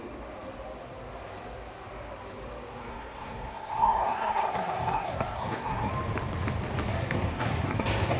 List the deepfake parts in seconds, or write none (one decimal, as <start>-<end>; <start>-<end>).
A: 2.9-5.9; 6.9-8.2